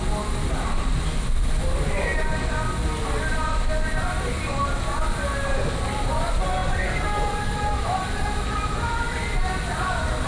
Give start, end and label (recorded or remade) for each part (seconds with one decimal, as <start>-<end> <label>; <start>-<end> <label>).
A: 0.0-10.3 recorded